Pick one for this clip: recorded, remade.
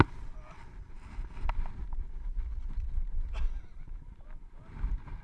recorded